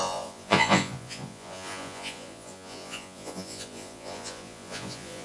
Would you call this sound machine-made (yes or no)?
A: yes